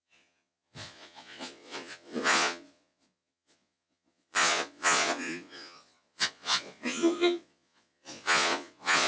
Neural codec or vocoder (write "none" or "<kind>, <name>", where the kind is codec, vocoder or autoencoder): vocoder, Vocos